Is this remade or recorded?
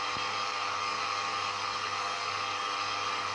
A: remade